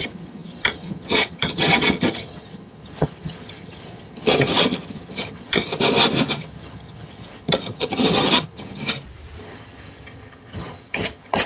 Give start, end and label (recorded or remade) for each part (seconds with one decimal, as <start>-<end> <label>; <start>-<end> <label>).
0.0-5.7 remade; 5.7-6.4 recorded; 6.4-8.8 remade; 8.8-9.4 recorded; 9.4-11.5 remade